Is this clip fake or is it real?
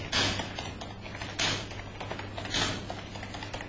real